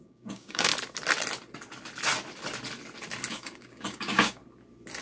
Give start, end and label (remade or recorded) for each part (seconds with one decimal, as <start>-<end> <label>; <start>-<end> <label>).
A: 0.0-0.7 remade; 0.7-3.3 recorded; 3.3-4.4 remade; 4.4-5.0 recorded